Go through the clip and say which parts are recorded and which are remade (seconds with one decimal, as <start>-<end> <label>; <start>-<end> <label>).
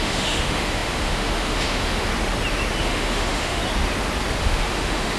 0.0-2.1 remade; 2.1-2.8 recorded; 2.8-3.6 remade; 3.6-4.4 recorded; 4.4-5.2 remade